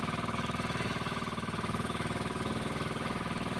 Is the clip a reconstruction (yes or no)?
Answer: yes